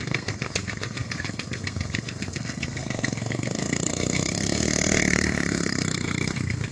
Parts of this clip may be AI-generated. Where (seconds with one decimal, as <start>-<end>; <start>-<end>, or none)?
0.0-6.7